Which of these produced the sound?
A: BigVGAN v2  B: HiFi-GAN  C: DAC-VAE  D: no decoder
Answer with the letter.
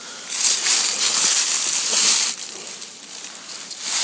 D